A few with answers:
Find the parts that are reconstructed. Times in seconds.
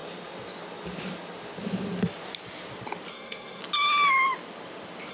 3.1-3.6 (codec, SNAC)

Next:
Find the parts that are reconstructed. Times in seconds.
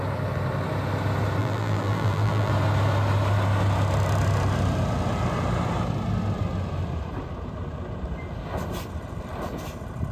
1.4-2.5 (vocoder, BigVGAN v2)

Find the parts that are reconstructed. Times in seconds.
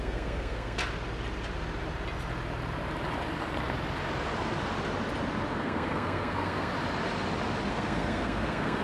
0.0-0.8 (codec, SNAC); 5.6-6.7; 7.7-8.8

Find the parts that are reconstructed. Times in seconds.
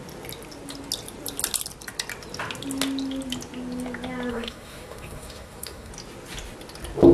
4.3-5.9 (codec, SNAC)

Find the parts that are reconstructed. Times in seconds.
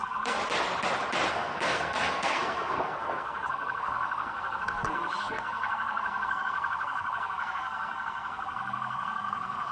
0.0-0.4 (codec, SNAC); 1.3-9.7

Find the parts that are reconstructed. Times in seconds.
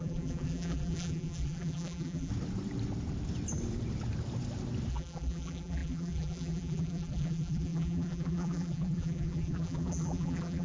0.0-2.3 (vocoder, BigVGAN v2); 4.9-10.6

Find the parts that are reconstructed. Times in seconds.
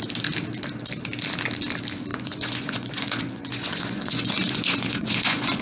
2.1-5.6 (vocoder, Vocos)